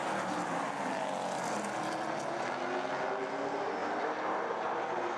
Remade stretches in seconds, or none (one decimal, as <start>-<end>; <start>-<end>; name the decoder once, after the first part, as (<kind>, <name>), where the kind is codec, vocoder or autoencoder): none